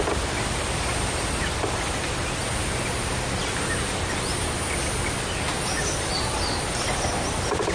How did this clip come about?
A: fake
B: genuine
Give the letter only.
B